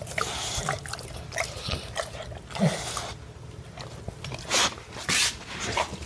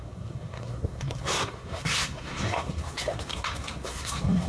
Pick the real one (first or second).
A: first